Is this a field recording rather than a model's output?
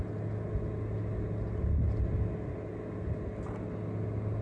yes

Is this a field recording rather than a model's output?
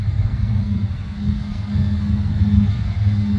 no